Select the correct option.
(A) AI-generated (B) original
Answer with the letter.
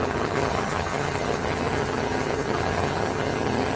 A